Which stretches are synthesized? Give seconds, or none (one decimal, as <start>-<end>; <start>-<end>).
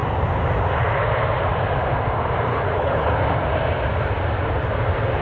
2.5-3.1